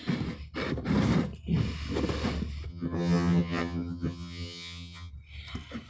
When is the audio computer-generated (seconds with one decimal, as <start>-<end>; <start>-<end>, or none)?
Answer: 2.7-5.1